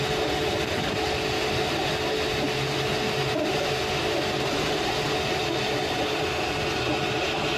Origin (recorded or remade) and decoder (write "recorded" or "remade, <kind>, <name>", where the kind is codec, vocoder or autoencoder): recorded